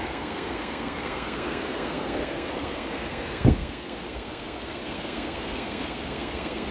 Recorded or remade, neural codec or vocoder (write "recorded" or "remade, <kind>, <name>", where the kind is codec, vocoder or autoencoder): remade, codec, SNAC